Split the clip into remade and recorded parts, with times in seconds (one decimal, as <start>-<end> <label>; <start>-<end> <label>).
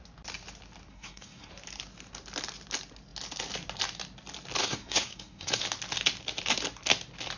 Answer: 0.0-0.9 recorded; 0.9-1.5 remade; 1.5-4.6 recorded; 4.6-5.6 remade; 5.6-7.4 recorded